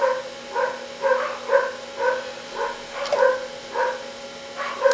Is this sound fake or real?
real